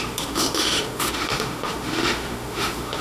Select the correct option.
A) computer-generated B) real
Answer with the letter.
A